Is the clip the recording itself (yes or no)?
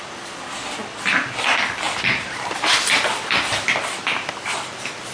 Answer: no